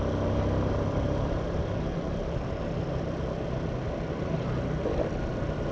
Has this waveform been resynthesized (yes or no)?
no